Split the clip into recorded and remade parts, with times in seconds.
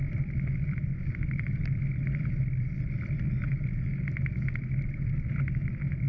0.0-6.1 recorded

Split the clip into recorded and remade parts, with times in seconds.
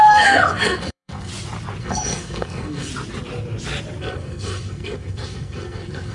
0.0-1.3 remade; 1.3-1.8 recorded; 1.8-2.9 remade; 2.9-4.0 recorded; 4.0-6.1 remade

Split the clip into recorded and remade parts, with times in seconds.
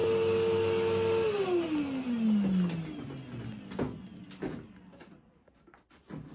0.0-6.3 recorded